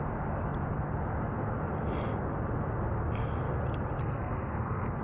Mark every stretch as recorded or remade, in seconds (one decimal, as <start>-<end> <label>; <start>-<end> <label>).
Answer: 0.0-4.0 recorded; 4.0-5.0 remade